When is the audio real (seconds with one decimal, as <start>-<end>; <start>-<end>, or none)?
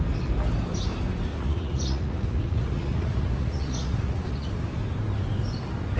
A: 0.0-1.3; 4.5-6.0